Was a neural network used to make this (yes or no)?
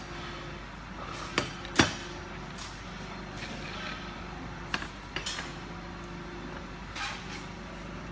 no